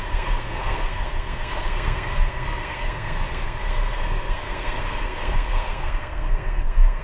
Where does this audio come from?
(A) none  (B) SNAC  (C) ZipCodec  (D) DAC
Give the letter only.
B